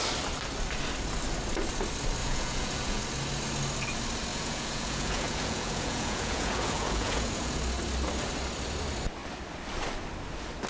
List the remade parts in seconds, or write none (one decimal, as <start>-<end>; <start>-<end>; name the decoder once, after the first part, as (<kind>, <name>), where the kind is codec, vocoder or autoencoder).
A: 2.2-3.0 (vocoder, Vocos); 4.3-7.6